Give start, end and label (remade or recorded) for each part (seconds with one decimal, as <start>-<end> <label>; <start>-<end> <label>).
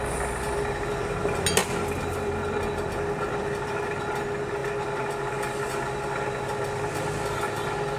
0.0-8.0 recorded